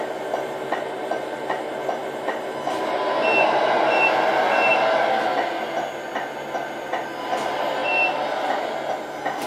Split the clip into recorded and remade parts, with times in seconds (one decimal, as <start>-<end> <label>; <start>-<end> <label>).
0.0-9.5 recorded